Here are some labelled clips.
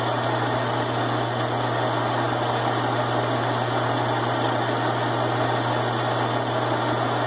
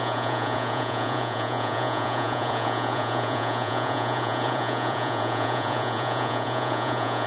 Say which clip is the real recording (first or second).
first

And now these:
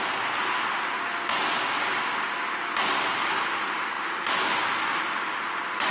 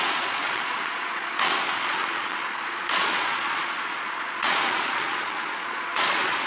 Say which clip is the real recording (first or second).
first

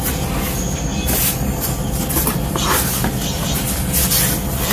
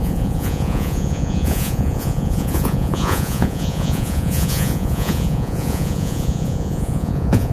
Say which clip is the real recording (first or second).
first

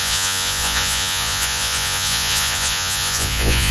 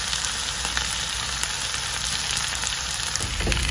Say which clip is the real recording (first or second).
second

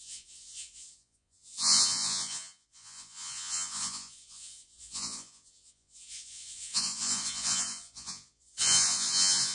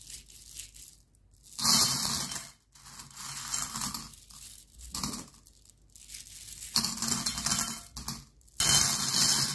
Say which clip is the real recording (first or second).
second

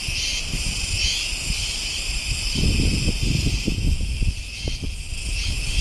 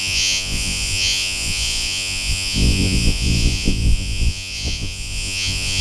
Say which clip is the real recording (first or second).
first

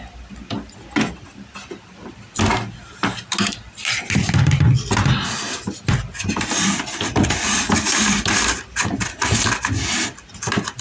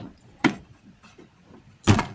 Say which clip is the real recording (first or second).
first